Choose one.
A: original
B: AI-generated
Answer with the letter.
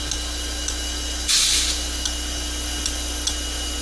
A